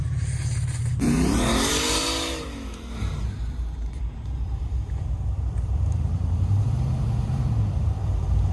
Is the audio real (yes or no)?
no